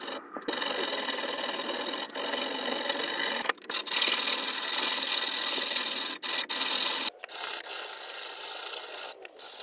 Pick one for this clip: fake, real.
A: real